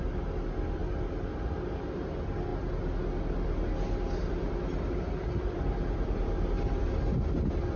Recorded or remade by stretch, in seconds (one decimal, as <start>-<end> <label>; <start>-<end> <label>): 0.0-7.8 recorded

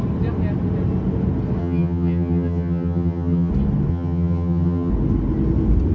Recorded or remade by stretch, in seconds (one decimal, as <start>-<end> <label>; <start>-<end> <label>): 0.0-1.6 recorded; 1.6-3.5 remade; 3.5-3.9 recorded; 3.9-4.9 remade; 4.9-5.9 recorded

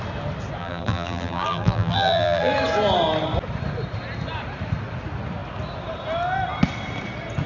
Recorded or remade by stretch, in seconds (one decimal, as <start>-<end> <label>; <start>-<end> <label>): 0.0-0.6 recorded; 0.6-2.5 remade; 2.5-7.5 recorded

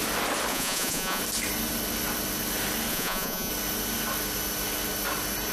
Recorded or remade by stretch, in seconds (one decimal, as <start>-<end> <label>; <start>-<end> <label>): 0.0-0.5 recorded; 0.5-1.2 remade; 1.2-2.9 recorded; 2.9-3.5 remade; 3.5-5.5 recorded

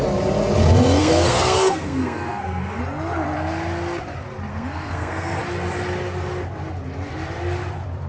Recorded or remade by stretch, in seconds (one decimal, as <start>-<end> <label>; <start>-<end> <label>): 0.0-1.0 recorded; 1.0-2.8 remade; 2.8-4.5 recorded; 4.5-5.4 remade; 5.4-8.1 recorded